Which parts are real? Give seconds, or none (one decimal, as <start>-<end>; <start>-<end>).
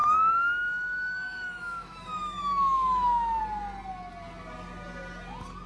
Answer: 3.4-5.7